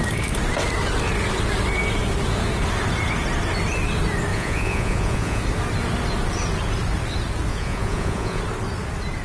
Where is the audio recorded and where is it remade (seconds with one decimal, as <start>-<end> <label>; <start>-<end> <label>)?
0.0-4.3 recorded; 4.3-5.4 remade; 5.4-7.5 recorded; 7.5-8.4 remade; 8.4-9.2 recorded